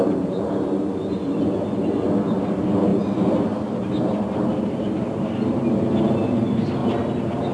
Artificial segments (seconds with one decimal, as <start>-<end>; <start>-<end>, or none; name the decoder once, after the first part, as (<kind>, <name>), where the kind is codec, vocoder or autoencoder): none